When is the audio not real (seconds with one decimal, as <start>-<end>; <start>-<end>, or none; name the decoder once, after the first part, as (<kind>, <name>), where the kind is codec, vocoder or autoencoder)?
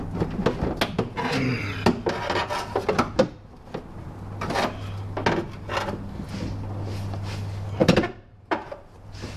7.8-8.9 (vocoder, BigVGAN v2)